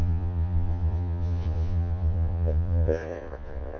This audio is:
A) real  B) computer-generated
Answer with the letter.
B